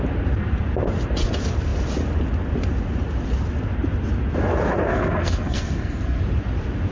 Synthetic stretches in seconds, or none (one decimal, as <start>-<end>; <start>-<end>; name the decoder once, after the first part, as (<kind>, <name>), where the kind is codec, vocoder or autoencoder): 4.9-6.2 (codec, SNAC)